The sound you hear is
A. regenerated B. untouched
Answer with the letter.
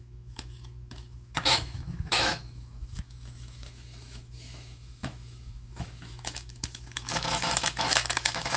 A